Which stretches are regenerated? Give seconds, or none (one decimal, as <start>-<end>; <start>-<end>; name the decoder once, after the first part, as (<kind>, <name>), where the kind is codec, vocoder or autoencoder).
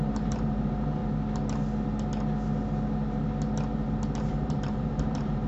0.0-1.0 (vocoder, BigVGAN v2); 4.3-5.5